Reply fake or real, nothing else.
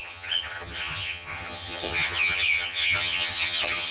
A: fake